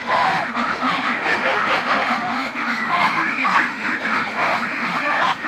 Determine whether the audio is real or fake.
fake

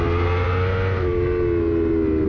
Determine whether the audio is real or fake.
real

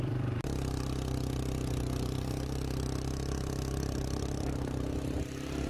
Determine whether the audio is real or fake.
fake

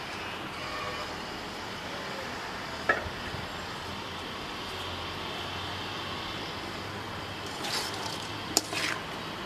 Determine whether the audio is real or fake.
real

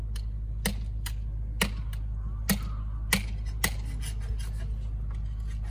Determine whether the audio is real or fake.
real